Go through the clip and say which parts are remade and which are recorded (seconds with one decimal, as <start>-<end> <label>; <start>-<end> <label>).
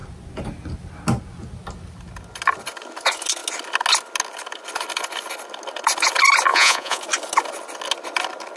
0.0-6.5 recorded; 6.5-7.0 remade; 7.0-8.6 recorded